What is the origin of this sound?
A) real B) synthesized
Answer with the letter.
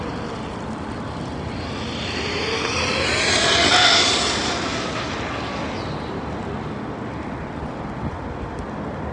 A